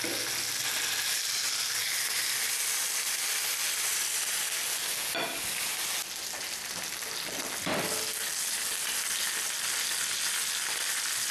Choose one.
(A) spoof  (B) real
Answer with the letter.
B